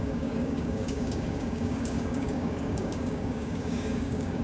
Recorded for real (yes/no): no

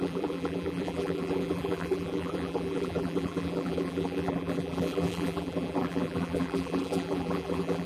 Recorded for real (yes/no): no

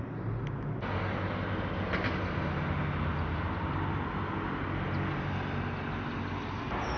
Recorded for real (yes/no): yes